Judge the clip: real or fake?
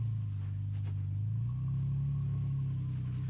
real